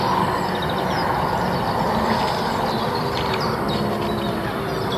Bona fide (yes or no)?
yes